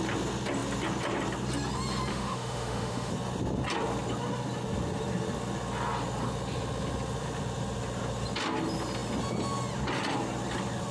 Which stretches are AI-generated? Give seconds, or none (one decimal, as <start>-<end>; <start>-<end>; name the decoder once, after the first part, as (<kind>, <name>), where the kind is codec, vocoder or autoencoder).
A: 2.1-3.1 (autoencoder, DAC-VAE)